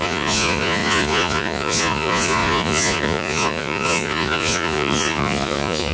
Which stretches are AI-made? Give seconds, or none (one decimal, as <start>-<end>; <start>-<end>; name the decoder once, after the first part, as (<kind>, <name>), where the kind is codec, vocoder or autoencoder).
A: 0.0-5.9 (vocoder, Vocos)